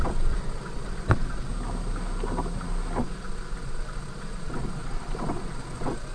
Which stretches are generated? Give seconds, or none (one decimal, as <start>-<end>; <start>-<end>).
0.0-1.5; 3.0-6.1